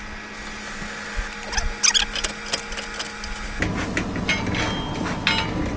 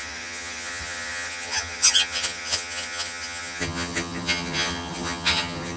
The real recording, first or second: first